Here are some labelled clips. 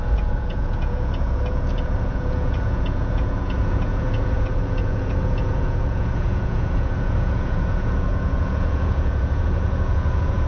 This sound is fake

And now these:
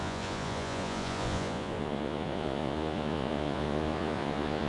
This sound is fake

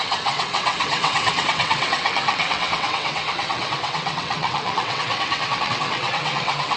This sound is fake